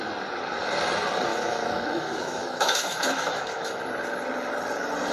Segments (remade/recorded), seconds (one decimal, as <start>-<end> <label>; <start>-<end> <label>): 0.0-1.3 recorded; 1.3-3.8 remade; 3.8-5.1 recorded